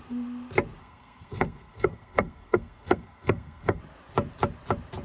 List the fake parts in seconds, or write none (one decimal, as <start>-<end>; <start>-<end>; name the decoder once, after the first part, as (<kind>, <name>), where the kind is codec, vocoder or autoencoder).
0.8-3.8 (codec, SNAC)